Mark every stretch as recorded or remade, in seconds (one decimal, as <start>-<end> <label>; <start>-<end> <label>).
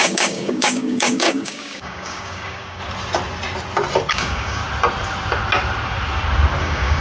0.0-2.8 remade; 2.8-4.1 recorded; 4.1-4.6 remade; 4.6-6.6 recorded; 6.6-7.0 remade